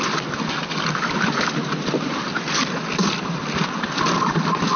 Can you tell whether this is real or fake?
real